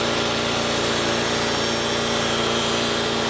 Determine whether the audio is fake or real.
real